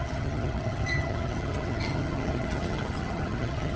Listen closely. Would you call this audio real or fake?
fake